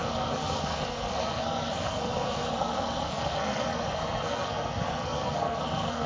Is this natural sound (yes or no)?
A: no